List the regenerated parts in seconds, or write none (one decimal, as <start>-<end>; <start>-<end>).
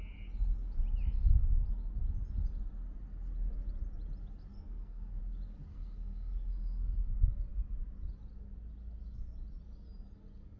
4.5-5.2; 5.7-7.1